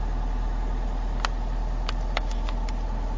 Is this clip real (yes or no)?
yes